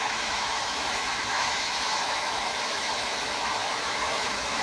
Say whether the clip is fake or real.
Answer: fake